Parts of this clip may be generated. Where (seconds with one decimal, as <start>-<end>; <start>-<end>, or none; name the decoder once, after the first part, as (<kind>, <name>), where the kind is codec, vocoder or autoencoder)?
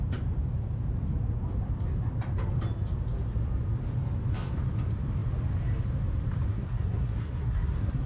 6.5-8.1 (codec, SNAC)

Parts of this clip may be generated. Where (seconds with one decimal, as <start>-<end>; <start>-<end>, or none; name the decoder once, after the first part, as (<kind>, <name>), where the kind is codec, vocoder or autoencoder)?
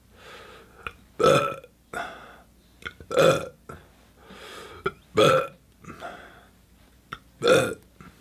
none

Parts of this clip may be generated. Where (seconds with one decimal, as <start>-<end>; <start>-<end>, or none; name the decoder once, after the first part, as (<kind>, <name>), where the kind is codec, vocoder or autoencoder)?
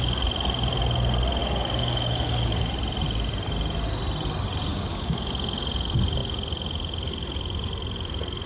1.4-2.7 (codec, DAC); 4.7-5.3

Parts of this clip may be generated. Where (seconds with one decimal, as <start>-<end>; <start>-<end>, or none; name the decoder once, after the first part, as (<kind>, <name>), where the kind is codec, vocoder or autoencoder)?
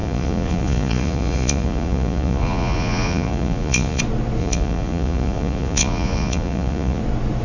0.0-4.0 (vocoder, Vocos); 4.4-7.0